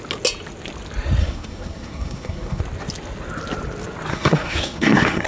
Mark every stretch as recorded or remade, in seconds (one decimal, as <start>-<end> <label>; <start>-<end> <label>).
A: 0.0-1.2 recorded; 1.2-2.6 remade; 2.6-4.1 recorded; 4.1-5.3 remade